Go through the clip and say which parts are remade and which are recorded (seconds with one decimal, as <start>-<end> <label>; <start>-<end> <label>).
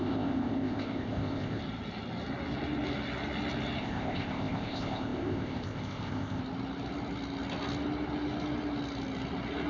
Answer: 0.0-1.6 remade; 1.6-3.8 recorded; 3.8-6.4 remade; 6.4-9.7 recorded